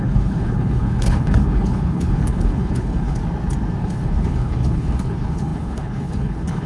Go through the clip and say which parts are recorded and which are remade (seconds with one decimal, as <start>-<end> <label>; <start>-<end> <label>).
0.0-3.2 remade; 3.2-3.8 recorded; 3.8-6.7 remade